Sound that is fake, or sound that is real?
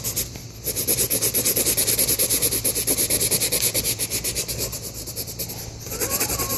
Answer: real